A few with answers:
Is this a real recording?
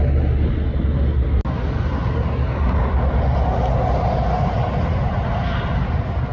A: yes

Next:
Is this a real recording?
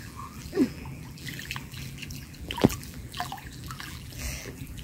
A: no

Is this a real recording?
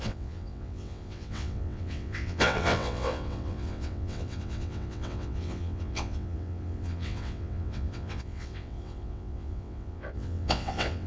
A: no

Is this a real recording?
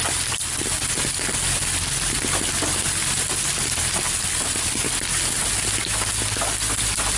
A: yes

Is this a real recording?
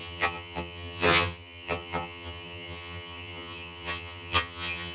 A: no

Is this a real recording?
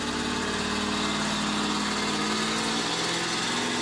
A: yes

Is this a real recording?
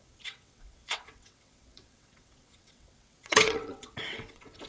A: no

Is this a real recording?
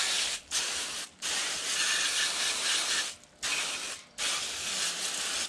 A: yes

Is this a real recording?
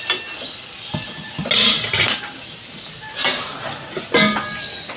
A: yes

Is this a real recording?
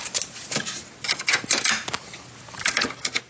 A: yes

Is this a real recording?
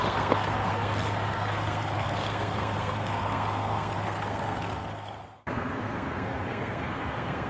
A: no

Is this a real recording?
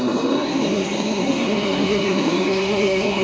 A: no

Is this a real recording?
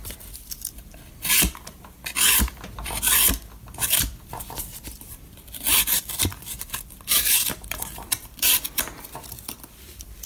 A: no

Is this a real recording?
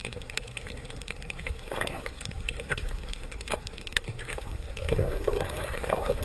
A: no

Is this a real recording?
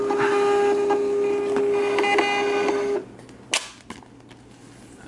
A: yes